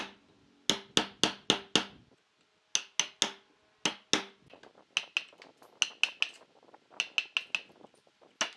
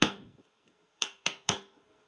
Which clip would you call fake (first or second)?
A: second